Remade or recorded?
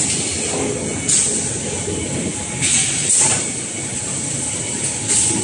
recorded